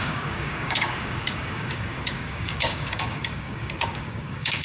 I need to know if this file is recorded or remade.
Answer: remade